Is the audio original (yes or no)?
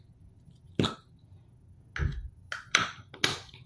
yes